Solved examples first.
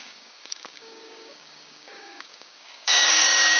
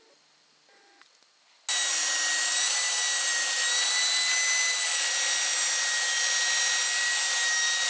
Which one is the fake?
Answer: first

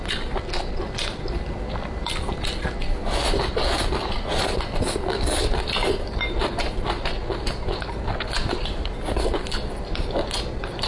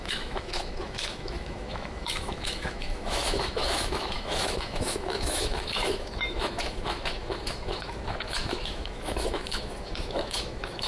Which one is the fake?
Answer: second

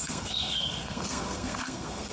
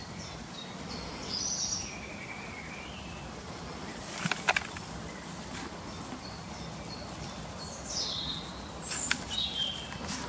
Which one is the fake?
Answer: first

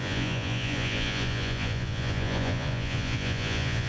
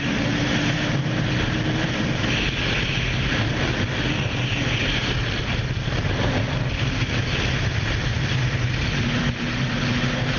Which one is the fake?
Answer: first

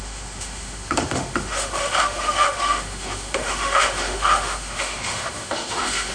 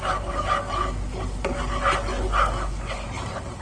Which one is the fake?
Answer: first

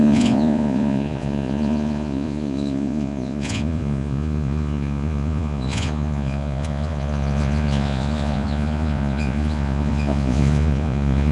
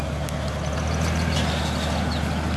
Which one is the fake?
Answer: first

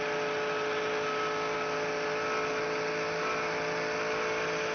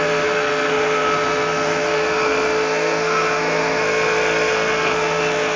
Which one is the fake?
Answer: second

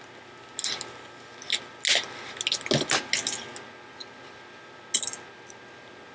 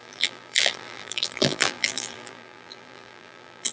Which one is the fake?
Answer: second